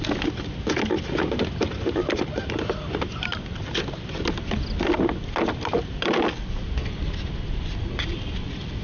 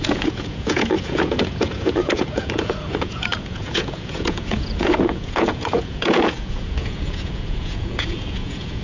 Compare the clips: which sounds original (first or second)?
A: first